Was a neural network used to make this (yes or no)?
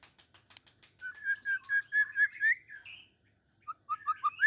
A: no